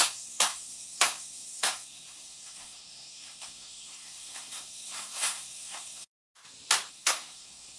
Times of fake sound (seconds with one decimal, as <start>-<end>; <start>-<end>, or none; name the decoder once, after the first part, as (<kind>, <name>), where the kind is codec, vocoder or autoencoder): 0.0-6.2 (codec, SNAC); 6.9-7.8